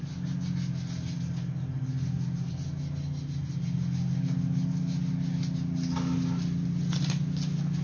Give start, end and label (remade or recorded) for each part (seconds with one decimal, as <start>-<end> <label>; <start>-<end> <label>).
0.0-7.8 recorded